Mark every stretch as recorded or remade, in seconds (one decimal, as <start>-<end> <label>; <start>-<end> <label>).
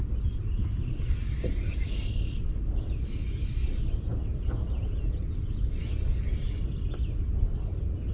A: 0.0-8.1 recorded